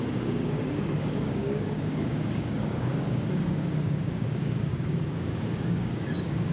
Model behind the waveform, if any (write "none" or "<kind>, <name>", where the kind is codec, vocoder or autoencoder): codec, DAC